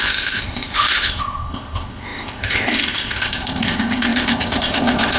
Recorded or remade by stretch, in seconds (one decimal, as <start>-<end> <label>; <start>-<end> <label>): 0.0-5.2 remade